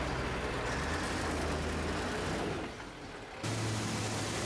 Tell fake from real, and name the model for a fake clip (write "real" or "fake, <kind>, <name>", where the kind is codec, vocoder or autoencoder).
real